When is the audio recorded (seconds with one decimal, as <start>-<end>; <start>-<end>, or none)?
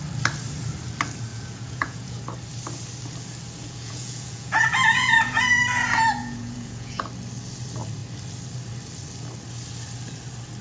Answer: 0.0-1.3; 2.2-3.6; 5.6-6.2; 7.0-10.6